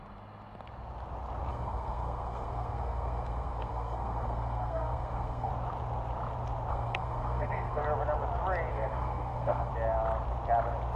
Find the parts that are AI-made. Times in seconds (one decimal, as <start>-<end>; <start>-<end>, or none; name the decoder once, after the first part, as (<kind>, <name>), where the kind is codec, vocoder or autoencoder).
1.5-5.5 (codec, SNAC); 6.7-7.8; 8.7-9.7